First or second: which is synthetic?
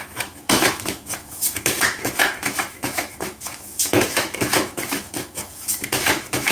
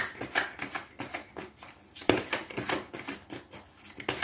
first